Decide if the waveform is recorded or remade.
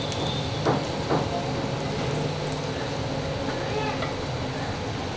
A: recorded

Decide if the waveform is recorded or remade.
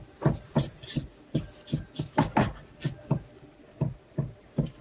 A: recorded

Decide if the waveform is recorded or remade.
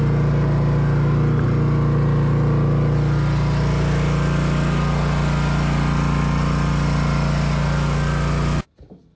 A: recorded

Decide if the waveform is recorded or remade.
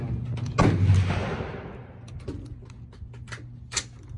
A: recorded